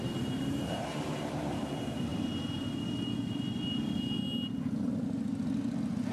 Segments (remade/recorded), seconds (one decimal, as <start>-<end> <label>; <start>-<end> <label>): 0.0-2.1 remade; 2.1-6.1 recorded